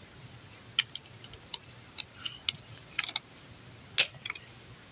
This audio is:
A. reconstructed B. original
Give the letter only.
B